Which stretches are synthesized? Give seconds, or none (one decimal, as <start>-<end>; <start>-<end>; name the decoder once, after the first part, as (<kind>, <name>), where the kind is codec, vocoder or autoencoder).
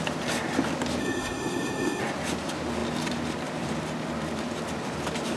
1.0-2.0 (codec, SNAC)